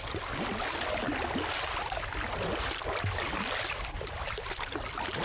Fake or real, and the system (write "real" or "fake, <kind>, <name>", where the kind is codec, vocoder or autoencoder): real